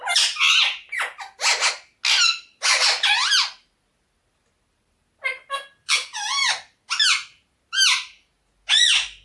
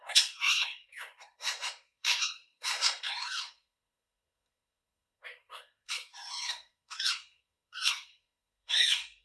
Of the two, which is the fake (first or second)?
second